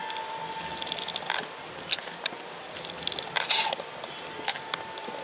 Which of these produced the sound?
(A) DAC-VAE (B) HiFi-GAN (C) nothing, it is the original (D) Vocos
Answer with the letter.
C